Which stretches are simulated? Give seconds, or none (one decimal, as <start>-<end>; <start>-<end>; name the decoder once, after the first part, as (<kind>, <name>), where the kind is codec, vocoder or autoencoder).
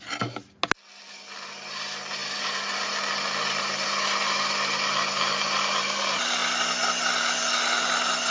none